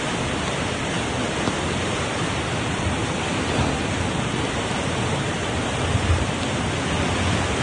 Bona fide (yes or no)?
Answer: yes